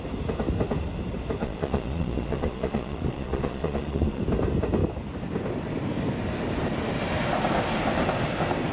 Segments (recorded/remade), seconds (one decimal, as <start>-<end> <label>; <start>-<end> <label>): 0.0-1.4 recorded; 1.4-4.2 remade; 4.2-8.7 recorded